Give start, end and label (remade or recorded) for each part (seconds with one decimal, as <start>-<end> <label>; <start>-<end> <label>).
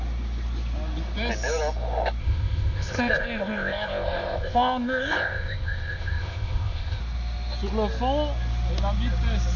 0.0-2.2 recorded; 2.2-7.0 remade; 7.0-9.6 recorded